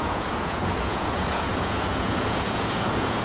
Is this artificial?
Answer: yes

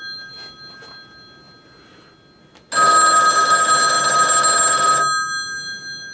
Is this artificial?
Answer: no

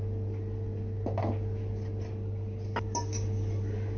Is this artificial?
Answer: no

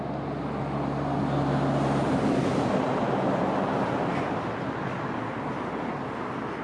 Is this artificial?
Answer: no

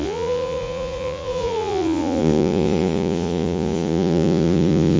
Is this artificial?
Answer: yes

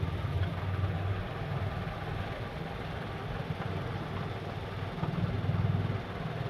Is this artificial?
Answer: no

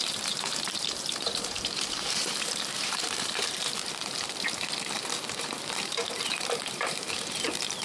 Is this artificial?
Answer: yes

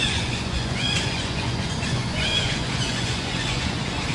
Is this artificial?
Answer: yes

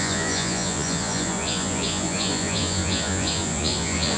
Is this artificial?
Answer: yes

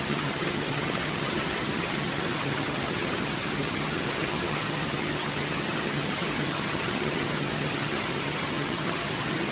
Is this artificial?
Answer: yes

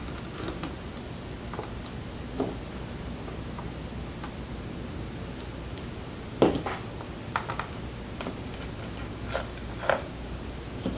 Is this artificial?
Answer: no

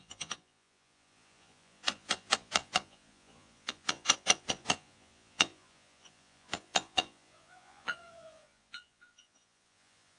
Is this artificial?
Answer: yes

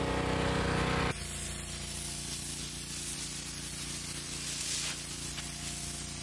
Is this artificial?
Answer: no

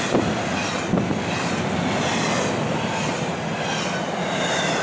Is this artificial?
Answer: no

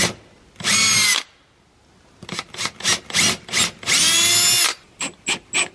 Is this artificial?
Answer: no